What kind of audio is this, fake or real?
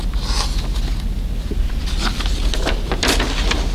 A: real